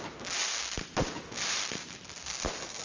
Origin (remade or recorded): recorded